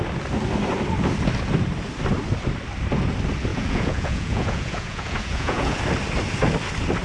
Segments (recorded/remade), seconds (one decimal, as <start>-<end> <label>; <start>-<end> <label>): 0.0-3.5 recorded; 3.5-5.8 remade; 5.8-7.0 recorded